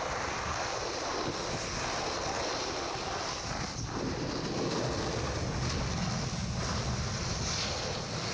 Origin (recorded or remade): recorded